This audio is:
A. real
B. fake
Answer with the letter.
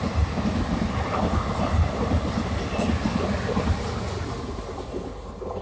A